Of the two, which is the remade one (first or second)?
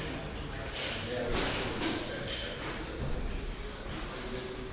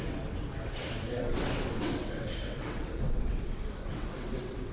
second